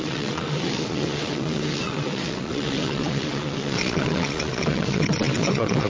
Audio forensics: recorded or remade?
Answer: remade